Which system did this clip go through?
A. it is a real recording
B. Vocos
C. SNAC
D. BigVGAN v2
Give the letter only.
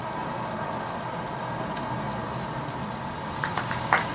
A